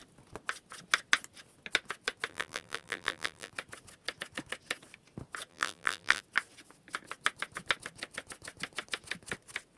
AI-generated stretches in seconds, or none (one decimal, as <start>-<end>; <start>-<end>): 2.3-3.5; 5.5-6.2